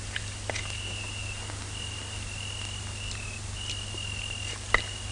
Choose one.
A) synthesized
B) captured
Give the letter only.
B